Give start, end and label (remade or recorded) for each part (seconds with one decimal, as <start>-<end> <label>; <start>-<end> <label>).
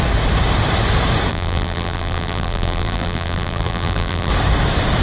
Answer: 0.0-1.3 recorded; 1.3-4.3 remade; 4.3-5.0 recorded